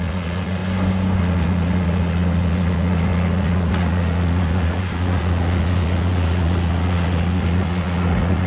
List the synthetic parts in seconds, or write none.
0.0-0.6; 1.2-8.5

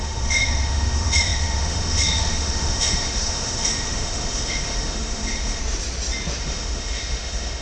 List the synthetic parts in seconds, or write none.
0.0-5.6; 6.4-7.6

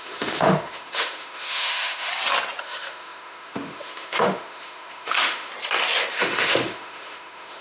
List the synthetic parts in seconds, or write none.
0.0-2.1; 2.6-5.5; 6.2-7.6

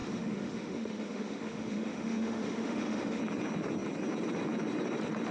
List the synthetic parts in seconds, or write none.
0.0-3.2

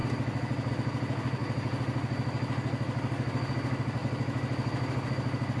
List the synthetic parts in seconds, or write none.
none

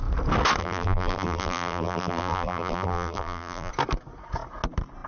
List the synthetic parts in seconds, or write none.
0.6-3.7

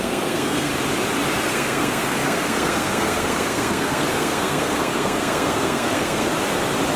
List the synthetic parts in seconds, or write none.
0.0-0.7; 1.4-6.3

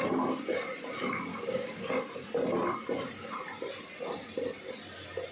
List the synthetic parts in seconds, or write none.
1.3-1.9